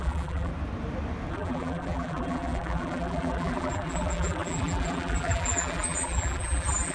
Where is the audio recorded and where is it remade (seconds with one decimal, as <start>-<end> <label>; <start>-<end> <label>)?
0.0-0.5 remade; 0.5-1.3 recorded; 1.3-6.9 remade